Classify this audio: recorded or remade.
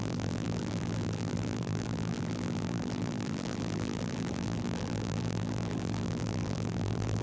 remade